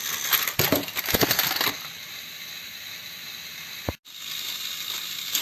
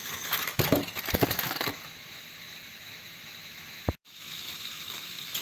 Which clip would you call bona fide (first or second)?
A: first